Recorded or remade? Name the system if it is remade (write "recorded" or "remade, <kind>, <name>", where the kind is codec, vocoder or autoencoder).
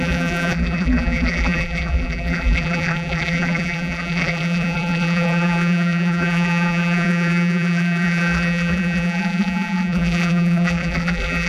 remade, vocoder, BigVGAN v2